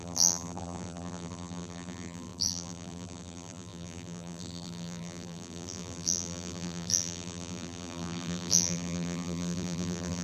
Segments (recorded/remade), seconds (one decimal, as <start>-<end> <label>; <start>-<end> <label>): 0.0-10.2 remade